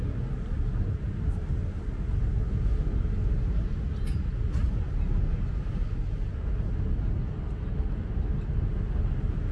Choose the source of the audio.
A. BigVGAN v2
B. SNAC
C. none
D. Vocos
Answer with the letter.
C